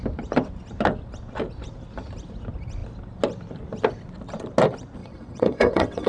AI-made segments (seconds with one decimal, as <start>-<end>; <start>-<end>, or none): 5.0-6.1